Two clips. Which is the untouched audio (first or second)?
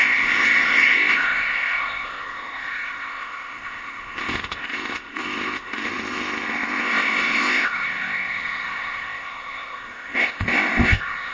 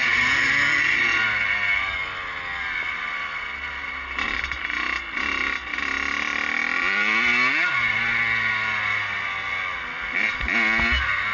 second